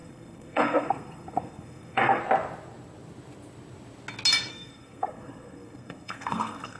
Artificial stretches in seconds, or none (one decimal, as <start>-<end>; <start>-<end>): 0.0-2.2; 4.5-6.8